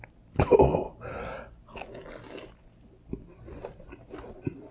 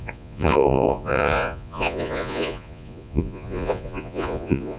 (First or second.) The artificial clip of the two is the second